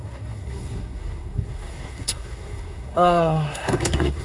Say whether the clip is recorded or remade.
remade